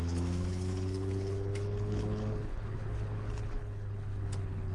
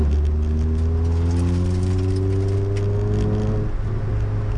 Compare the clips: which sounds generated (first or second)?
first